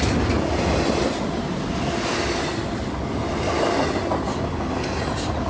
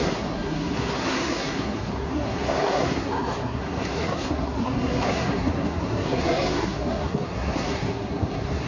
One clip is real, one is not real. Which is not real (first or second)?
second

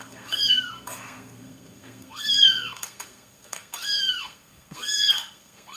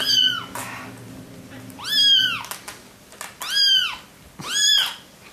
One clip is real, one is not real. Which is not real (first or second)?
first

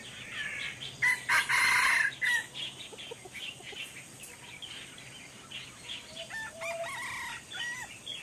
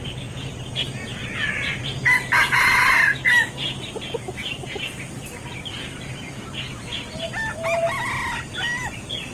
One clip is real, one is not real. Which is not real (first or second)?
first